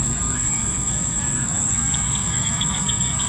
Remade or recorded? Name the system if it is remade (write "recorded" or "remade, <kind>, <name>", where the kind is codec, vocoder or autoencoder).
remade, codec, SNAC